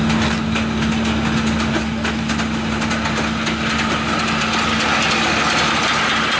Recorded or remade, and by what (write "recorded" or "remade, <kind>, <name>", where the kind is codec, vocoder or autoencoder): recorded